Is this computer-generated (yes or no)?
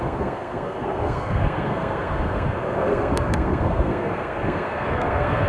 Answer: yes